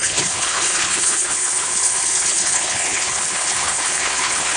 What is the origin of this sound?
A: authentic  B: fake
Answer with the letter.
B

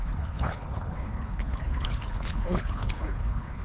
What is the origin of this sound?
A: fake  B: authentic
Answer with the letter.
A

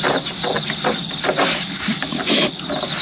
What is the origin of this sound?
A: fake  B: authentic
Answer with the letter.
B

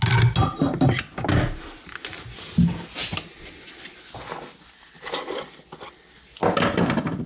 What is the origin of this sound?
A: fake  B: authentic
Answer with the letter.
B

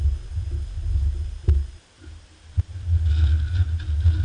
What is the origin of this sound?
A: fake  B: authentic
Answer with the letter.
B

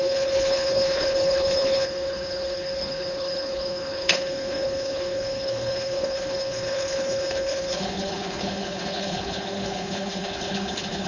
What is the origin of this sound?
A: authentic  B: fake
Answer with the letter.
B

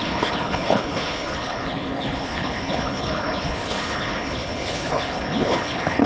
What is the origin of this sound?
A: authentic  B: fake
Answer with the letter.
B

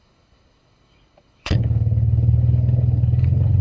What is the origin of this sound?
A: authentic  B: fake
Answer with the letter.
B